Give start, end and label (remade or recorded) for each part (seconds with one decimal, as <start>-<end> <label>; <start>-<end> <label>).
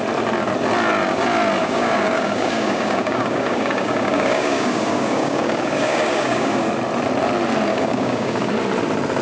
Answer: 0.0-1.6 recorded; 1.6-6.7 remade; 6.7-7.7 recorded; 7.7-8.5 remade; 8.5-9.2 recorded